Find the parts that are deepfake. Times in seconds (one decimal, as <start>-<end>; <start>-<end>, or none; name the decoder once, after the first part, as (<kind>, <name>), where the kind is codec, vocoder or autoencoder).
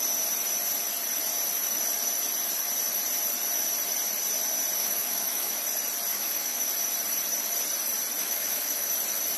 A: 4.8-5.6 (autoencoder, DAC-VAE); 6.1-6.7; 8.2-8.9